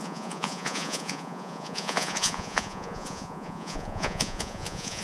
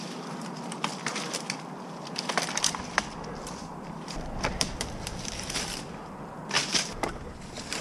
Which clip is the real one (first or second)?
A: second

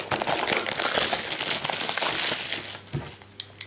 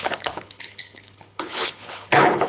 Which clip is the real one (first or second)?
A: first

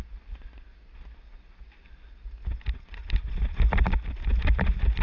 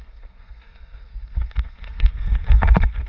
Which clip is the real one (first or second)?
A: first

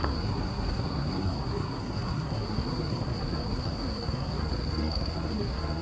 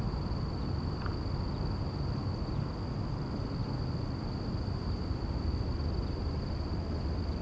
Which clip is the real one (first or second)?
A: second